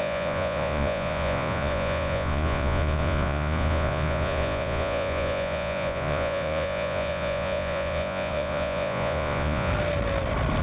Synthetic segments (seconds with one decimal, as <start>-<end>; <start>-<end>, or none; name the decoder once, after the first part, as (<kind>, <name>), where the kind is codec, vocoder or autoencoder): 0.0-9.7 (vocoder, Vocos)